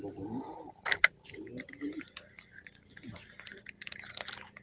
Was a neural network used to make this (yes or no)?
no